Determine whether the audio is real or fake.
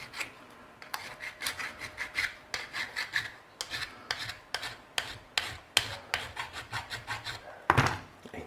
real